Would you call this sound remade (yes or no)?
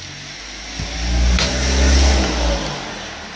no